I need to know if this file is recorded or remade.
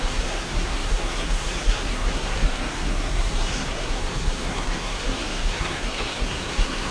remade